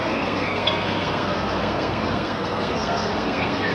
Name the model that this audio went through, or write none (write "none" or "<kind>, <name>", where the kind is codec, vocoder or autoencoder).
codec, SNAC